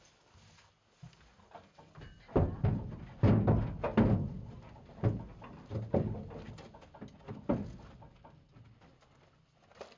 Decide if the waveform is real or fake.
real